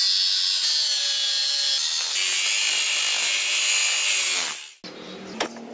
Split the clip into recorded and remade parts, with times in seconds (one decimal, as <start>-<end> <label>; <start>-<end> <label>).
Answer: 0.0-5.7 recorded